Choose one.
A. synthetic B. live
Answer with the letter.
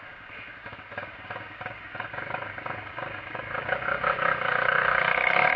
A